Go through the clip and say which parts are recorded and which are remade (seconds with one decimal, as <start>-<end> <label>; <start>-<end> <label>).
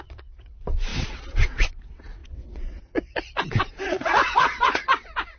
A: 0.0-5.4 remade